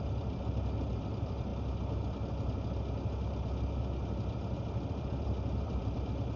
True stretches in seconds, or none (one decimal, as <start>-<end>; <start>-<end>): 1.5-4.9